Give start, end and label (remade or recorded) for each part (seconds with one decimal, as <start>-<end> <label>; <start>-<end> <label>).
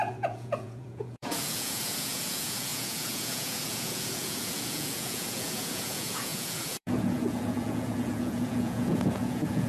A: 0.0-9.7 remade